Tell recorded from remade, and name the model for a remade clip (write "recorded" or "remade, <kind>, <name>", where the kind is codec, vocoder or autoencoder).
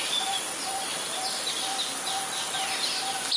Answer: recorded